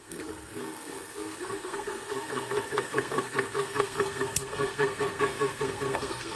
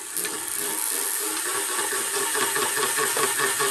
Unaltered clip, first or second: second